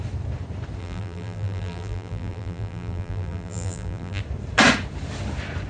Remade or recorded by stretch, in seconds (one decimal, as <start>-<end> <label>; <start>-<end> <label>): 0.0-0.8 recorded; 0.8-4.2 remade; 4.2-5.7 recorded